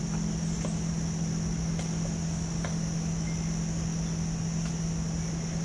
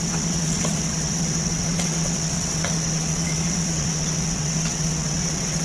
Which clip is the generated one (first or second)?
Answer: second